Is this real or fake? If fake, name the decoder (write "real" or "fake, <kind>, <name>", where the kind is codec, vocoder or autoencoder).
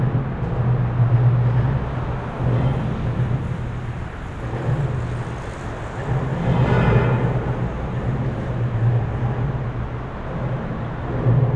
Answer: real